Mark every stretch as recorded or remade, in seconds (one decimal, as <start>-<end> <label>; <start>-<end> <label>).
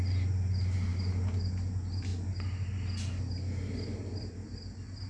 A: 0.0-5.1 recorded